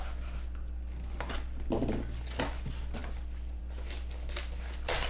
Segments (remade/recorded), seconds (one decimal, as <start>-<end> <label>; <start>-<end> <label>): 0.0-5.1 recorded